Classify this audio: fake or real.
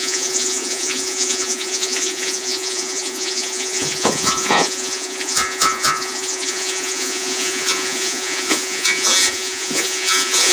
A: fake